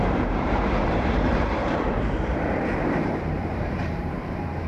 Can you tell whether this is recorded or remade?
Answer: remade